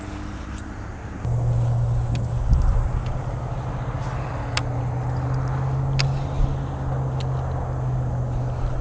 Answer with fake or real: real